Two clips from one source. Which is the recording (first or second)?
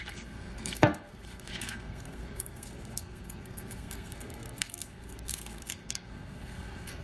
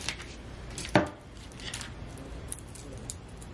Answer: second